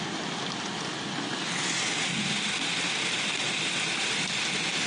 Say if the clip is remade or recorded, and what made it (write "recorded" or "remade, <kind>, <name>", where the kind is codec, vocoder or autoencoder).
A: recorded